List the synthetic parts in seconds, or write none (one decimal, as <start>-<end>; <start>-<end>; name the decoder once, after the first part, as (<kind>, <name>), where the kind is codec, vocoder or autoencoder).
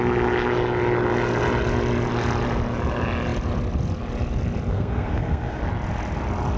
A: 4.7-5.6 (codec, SNAC)